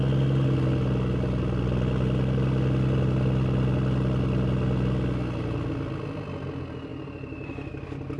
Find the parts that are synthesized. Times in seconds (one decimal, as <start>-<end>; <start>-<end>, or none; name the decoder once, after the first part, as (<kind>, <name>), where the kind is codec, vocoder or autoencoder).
none